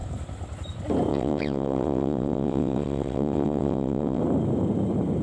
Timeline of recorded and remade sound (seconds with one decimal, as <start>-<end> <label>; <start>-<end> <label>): 0.0-1.1 recorded; 1.1-4.2 remade; 4.2-5.2 recorded